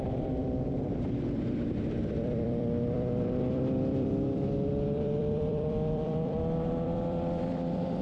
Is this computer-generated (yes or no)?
yes